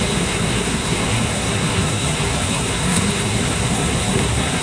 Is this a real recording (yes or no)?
no